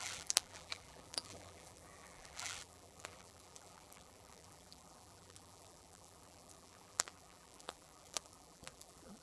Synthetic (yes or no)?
yes